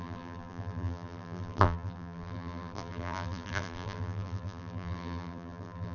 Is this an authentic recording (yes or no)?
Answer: no